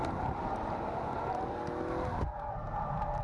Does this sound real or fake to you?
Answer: real